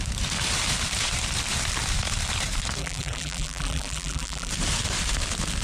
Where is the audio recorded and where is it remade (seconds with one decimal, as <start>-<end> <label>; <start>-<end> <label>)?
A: 0.0-2.8 recorded; 2.8-4.5 remade; 4.5-5.6 recorded